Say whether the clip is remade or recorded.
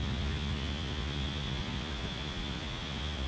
remade